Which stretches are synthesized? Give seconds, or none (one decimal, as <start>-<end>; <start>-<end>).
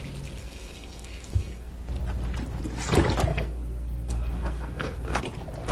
0.4-1.7; 3.3-5.2